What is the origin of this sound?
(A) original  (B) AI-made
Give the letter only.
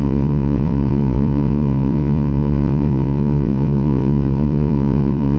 B